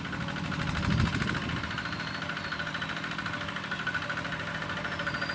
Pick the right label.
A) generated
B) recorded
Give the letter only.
B